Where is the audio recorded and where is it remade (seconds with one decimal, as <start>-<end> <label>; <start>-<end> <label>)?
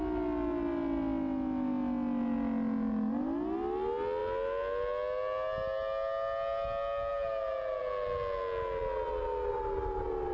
0.0-10.3 recorded